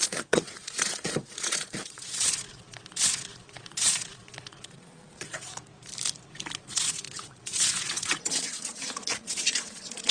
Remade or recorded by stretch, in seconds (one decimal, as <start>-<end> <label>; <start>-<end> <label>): 0.0-5.5 remade; 5.5-6.6 recorded; 6.6-10.1 remade